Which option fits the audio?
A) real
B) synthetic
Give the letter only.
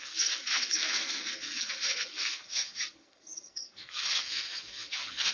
B